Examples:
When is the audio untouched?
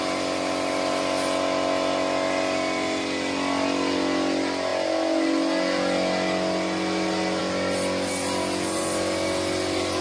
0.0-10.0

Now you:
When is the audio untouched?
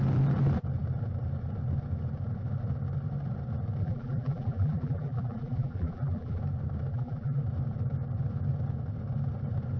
0.0-3.8; 6.4-6.9; 7.4-9.8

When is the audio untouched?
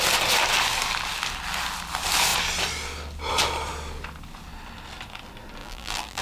0.0-5.6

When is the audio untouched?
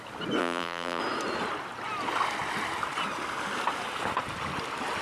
0.0-0.4; 1.0-5.0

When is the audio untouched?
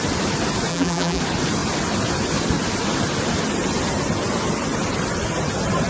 0.0-0.7; 1.2-5.9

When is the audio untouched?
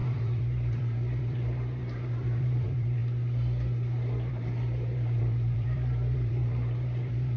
3.0-4.3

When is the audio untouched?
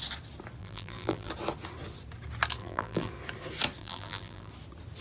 0.0-0.6; 1.3-2.6; 3.1-3.8; 4.5-5.0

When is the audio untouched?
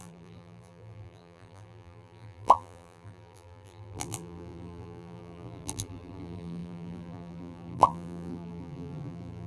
none